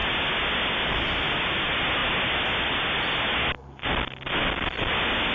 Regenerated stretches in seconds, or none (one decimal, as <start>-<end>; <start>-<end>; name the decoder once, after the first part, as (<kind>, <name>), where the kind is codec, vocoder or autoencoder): none